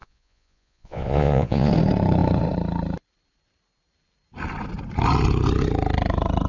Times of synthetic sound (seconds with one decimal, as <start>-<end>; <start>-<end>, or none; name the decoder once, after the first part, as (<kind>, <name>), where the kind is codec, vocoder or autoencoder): 0.0-1.7 (vocoder, Vocos)